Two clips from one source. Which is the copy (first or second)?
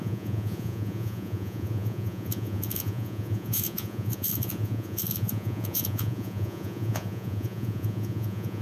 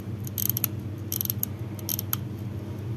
first